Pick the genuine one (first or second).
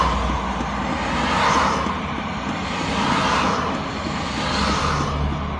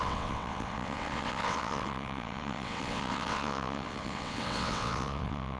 first